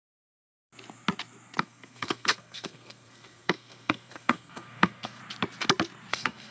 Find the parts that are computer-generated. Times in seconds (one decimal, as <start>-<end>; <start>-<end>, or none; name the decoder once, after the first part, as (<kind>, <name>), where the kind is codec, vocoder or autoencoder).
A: 0.0-0.7 (codec, SNAC); 1.6-5.2; 6.1-6.5